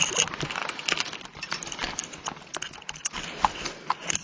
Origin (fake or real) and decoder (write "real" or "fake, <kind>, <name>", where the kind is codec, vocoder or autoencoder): real